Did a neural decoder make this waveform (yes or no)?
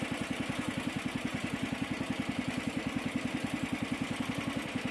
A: no